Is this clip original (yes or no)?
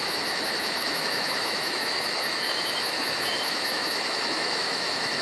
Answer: no